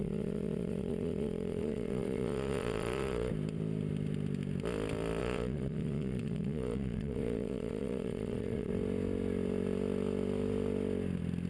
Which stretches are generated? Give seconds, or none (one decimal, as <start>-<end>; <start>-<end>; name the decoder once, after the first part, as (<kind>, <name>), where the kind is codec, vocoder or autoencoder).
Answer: 0.0-3.3 (vocoder, Vocos); 5.2-8.7